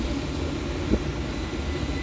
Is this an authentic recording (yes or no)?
yes